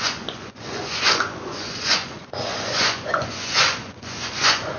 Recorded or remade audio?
remade